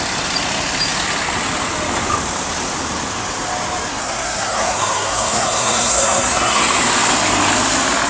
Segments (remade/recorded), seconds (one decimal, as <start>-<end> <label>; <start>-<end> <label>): 0.0-3.9 recorded; 3.9-6.6 remade; 6.6-8.1 recorded